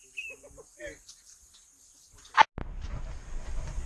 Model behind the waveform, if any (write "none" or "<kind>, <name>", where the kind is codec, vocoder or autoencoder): none